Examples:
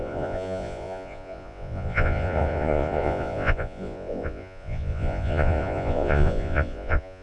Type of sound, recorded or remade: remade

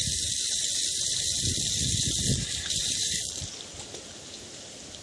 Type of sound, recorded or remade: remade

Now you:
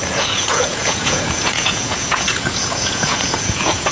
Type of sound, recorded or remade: remade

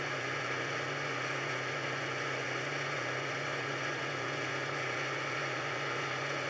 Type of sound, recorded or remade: remade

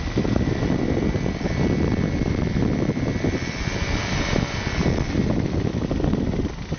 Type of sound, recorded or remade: remade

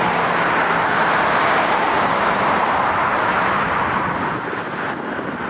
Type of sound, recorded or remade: recorded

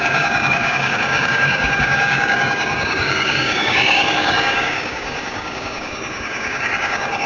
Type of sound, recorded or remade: remade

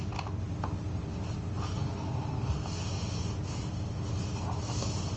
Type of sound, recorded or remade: recorded